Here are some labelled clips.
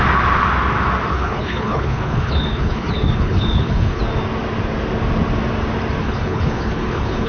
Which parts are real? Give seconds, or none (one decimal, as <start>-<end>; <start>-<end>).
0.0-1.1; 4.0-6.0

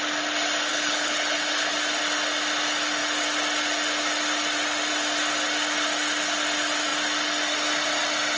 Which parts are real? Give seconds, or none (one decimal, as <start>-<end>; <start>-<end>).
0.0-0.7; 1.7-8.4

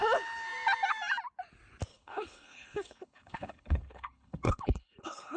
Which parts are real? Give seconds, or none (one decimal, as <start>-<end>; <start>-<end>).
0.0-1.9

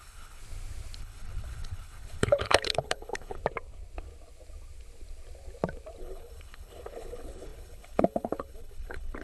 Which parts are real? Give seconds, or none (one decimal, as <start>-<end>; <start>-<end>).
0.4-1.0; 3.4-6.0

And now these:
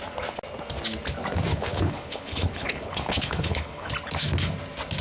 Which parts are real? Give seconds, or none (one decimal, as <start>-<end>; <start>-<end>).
0.0-1.5; 3.9-5.0